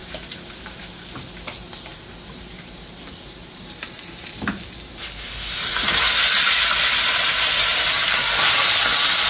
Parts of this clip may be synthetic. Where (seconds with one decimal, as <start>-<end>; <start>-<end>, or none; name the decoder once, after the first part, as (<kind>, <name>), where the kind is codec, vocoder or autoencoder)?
0.0-0.8 (vocoder, BigVGAN v2); 1.9-4.4